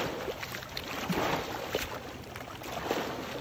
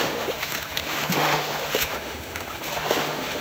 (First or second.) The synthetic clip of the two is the second